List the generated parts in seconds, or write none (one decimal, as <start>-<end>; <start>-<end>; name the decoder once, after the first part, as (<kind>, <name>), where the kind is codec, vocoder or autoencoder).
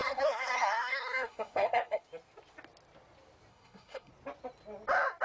0.0-2.0 (codec, SNAC); 3.5-4.1